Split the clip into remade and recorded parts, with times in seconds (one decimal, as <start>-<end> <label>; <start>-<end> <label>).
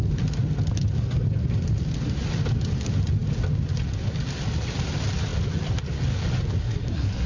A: 0.0-6.6 recorded; 6.6-7.3 remade